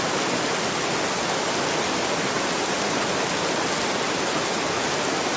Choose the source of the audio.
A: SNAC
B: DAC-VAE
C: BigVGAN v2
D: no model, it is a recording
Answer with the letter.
D